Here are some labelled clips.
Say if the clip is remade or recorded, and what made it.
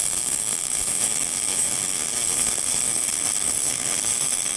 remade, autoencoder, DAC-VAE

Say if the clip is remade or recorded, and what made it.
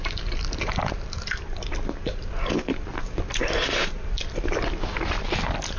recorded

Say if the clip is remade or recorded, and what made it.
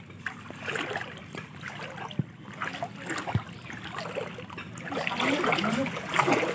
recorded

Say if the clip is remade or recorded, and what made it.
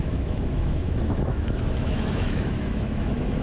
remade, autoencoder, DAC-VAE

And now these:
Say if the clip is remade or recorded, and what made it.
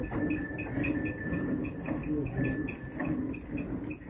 recorded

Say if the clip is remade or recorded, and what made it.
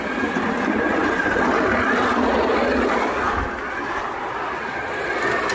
recorded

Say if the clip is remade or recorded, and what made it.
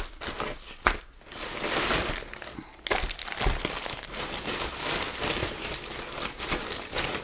recorded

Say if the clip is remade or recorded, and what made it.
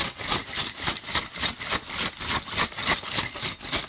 recorded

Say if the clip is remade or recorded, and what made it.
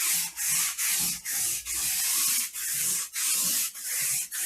recorded